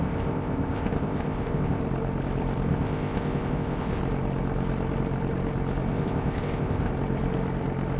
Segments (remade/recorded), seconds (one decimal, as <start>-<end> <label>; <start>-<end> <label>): 0.0-1.8 remade; 1.8-2.7 recorded; 2.7-4.0 remade; 4.0-5.9 recorded; 5.9-6.9 remade; 6.9-8.0 recorded